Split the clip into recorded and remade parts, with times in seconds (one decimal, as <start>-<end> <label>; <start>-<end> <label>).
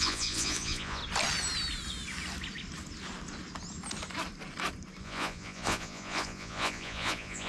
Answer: 0.0-1.0 remade; 1.0-5.0 recorded; 5.0-7.5 remade